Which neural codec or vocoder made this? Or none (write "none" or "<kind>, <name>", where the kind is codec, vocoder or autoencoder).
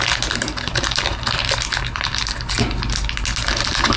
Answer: none